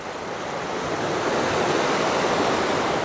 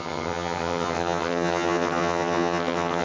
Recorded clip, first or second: first